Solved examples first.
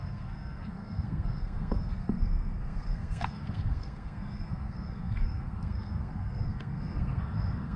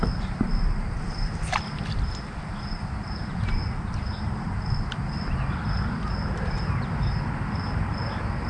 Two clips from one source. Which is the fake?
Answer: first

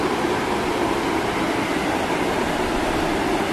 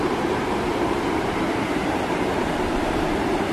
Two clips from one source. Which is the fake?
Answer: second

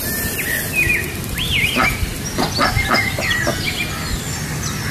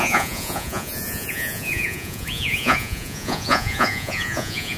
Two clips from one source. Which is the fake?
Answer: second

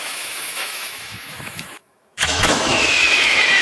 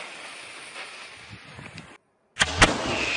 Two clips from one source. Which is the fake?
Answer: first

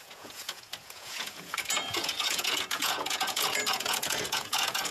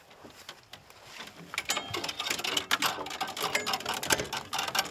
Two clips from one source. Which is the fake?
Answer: first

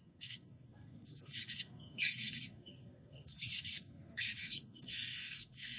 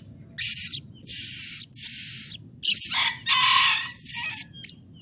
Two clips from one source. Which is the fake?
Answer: first